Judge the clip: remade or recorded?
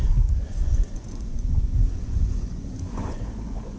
remade